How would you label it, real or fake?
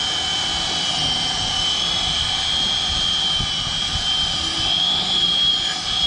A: fake